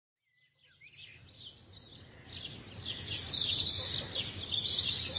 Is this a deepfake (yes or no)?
no